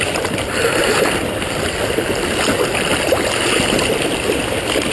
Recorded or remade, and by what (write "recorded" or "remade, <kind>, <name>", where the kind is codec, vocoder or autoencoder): recorded